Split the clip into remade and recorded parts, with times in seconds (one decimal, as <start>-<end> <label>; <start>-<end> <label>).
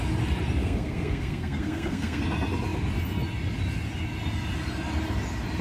0.0-0.6 recorded; 0.6-2.2 remade; 2.2-5.6 recorded